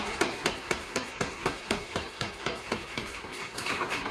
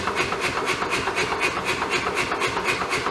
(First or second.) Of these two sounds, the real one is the second